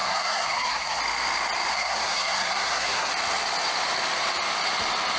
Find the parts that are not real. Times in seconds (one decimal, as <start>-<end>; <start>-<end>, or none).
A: 0.0-1.0; 1.7-3.1

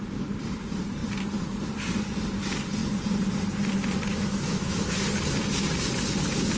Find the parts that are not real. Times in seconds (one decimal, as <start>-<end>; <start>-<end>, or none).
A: 4.1-5.1

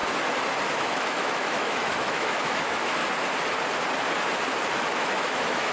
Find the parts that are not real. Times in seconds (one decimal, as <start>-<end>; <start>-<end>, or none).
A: 0.7-3.0; 4.9-5.7

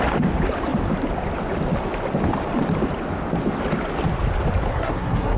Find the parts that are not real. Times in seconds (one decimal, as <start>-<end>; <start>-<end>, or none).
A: 4.7-5.4

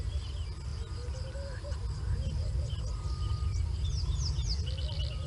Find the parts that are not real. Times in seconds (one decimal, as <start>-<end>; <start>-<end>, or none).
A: none

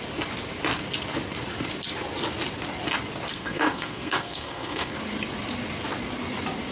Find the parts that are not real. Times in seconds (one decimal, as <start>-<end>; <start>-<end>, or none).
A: 3.3-5.0

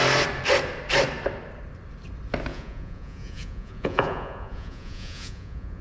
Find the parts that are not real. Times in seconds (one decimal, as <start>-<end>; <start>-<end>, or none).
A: 2.5-5.8

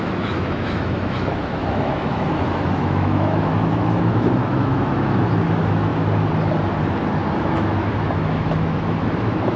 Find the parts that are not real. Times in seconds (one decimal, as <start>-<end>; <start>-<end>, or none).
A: 0.0-5.9; 7.3-9.6